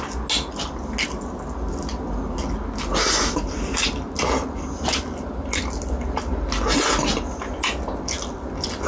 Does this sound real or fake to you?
real